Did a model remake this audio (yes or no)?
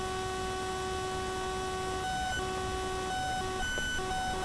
no